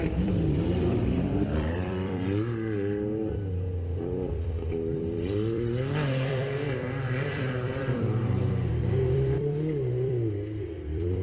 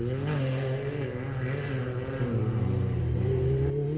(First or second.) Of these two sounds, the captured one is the second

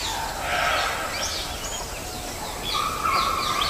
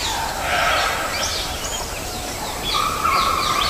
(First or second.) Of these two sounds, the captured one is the first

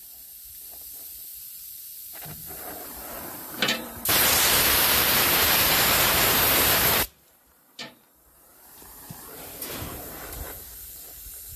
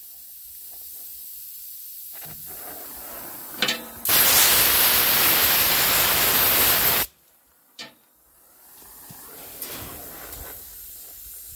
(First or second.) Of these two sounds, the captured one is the second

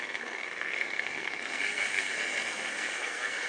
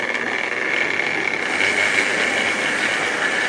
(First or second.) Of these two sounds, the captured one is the second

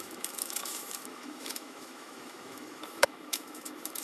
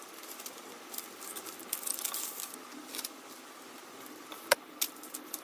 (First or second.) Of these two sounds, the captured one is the second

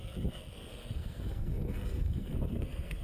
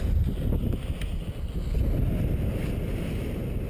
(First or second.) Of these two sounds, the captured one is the second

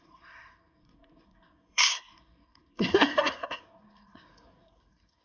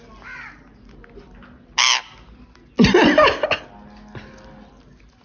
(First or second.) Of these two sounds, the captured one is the second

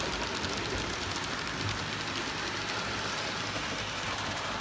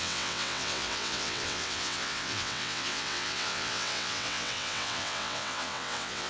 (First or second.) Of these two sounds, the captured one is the first